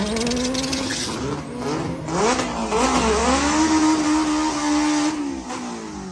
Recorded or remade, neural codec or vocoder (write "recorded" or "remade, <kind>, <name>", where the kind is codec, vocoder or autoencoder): recorded